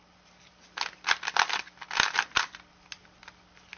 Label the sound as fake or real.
real